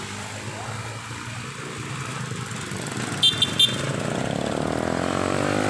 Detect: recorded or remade recorded